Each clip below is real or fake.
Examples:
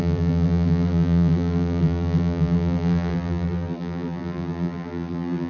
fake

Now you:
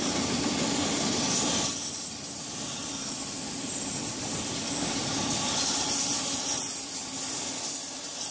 real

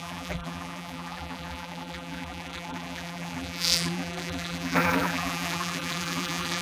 fake